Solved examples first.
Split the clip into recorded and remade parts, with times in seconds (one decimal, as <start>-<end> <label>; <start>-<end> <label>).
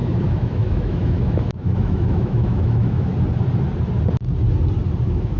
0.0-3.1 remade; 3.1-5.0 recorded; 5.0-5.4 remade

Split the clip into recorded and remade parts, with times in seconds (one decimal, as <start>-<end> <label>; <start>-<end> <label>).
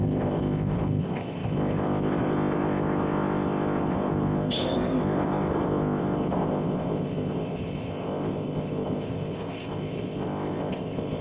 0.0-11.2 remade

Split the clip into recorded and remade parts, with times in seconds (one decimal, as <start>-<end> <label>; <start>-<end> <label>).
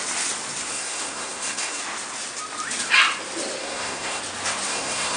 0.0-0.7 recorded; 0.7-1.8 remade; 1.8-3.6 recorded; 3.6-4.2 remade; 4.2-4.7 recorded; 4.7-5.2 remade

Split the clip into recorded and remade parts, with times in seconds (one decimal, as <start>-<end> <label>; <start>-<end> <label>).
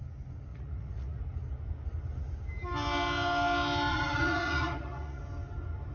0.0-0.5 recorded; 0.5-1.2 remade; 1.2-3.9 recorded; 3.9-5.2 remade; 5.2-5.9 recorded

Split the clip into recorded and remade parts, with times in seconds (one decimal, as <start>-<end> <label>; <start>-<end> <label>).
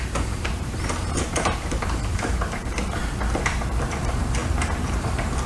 0.0-5.5 remade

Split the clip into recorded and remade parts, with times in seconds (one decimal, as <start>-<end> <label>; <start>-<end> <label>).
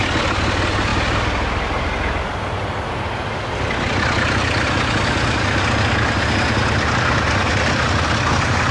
0.0-8.7 recorded